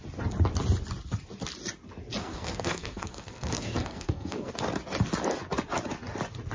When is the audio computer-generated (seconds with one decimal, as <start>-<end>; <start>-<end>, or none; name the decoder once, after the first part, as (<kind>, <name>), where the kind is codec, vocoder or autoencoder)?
2.2-4.5 (codec, SNAC)